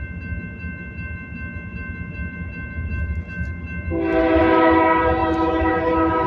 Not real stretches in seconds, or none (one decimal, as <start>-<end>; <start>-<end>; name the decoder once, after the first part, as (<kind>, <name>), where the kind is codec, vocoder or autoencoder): 5.2-5.7 (autoencoder, DAC-VAE)